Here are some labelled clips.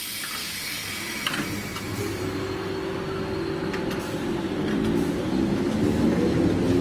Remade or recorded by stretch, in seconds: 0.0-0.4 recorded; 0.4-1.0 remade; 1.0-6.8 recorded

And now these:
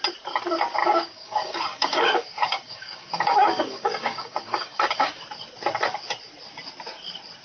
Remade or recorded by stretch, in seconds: 0.0-0.8 recorded; 0.8-5.2 remade; 5.2-7.4 recorded

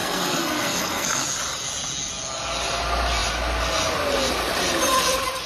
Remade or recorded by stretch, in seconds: 0.0-1.2 remade; 1.2-5.5 recorded

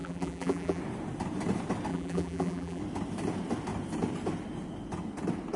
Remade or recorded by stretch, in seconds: 0.0-0.8 remade; 0.8-1.9 recorded; 1.9-2.8 remade; 2.8-5.6 recorded

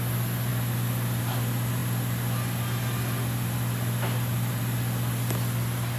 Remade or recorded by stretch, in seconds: 0.0-6.0 recorded